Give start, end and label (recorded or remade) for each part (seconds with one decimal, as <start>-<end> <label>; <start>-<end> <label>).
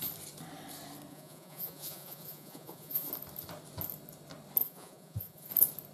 0.0-1.1 recorded; 1.1-3.1 remade; 3.1-4.6 recorded; 4.6-5.5 remade; 5.5-5.9 recorded